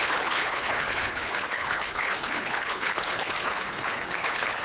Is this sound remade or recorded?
remade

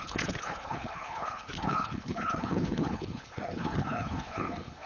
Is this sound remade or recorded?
remade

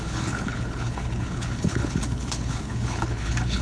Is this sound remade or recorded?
remade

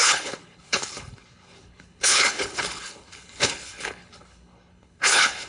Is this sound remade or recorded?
remade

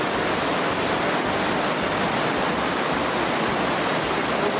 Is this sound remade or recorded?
recorded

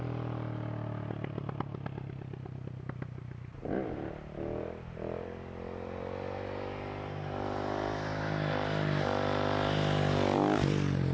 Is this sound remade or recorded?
recorded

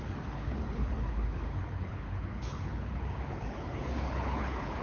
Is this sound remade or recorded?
remade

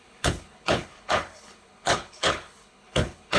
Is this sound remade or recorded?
remade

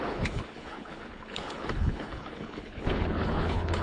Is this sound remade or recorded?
remade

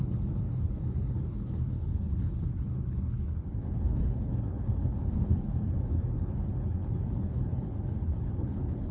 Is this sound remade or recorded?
remade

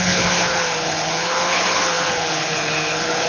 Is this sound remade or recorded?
remade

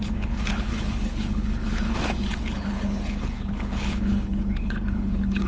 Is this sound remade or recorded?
remade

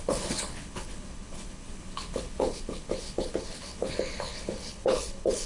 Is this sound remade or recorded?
remade